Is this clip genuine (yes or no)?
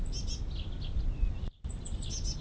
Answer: yes